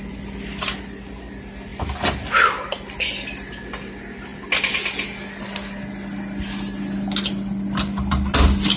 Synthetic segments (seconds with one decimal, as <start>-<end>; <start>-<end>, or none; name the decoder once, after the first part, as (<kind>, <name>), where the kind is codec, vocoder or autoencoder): none